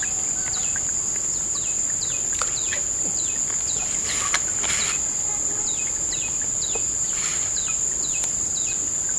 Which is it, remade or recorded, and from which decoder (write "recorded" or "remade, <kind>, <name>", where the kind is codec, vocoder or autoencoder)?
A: recorded